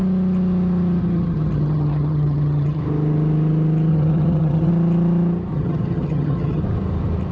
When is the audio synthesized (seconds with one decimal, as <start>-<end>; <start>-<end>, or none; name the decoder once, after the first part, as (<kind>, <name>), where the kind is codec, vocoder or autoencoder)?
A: 1.0-2.8 (vocoder, HiFi-GAN); 3.9-4.7; 5.5-6.6